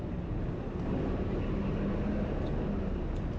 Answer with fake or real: real